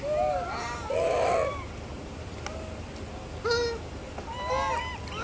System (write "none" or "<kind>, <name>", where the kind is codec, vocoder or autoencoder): none